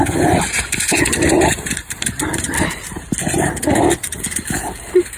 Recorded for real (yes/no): yes